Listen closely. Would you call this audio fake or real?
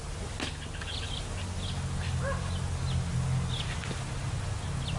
real